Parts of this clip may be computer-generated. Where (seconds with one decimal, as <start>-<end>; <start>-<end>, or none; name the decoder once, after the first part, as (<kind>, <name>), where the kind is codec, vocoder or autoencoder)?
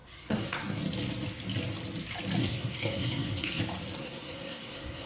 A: 0.0-0.8 (codec, SNAC); 2.4-3.6; 4.0-5.1